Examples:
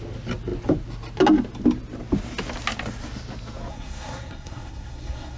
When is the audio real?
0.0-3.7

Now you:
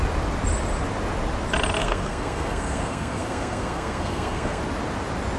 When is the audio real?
0.0-1.8; 4.6-5.4

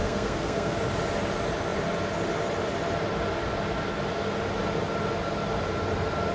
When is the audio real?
0.8-6.3